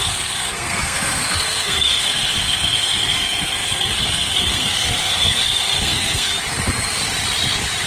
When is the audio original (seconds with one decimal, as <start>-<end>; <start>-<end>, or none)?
6.3-7.9